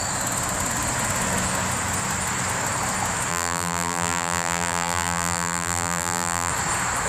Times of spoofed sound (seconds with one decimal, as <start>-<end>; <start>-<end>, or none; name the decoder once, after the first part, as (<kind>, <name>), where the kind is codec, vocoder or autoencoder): 3.3-6.5 (vocoder, BigVGAN v2)